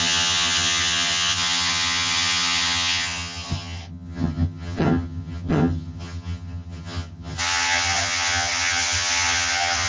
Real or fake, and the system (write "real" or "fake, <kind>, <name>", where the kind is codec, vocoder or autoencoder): fake, vocoder, HiFi-GAN